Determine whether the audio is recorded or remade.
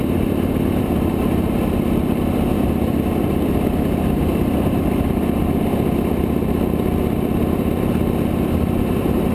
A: remade